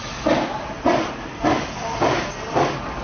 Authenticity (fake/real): real